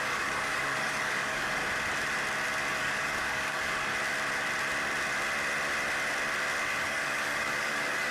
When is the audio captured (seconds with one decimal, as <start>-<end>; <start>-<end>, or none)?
1.6-2.7; 3.9-6.6